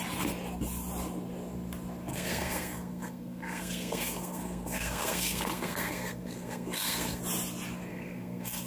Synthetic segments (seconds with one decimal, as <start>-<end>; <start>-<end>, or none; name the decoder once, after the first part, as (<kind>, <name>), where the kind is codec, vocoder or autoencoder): 2.1-7.2 (codec, SNAC); 7.9-8.7